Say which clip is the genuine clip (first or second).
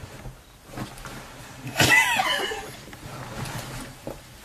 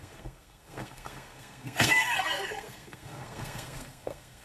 first